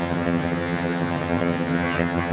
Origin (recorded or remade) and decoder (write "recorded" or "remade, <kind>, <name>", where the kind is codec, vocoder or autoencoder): remade, vocoder, HiFi-GAN